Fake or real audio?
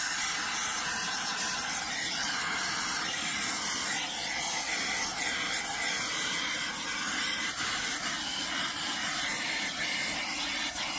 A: real